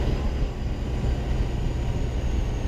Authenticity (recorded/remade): recorded